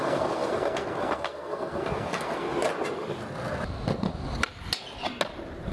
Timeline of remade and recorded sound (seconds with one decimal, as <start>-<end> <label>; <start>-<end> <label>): 0.0-2.5 remade; 2.5-5.7 recorded